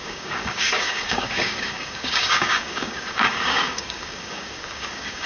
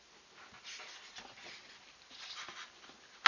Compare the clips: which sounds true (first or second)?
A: second